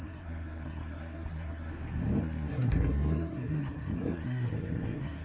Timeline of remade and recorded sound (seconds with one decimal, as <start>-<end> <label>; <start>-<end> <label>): 0.0-1.7 remade; 1.7-2.2 recorded; 2.2-5.2 remade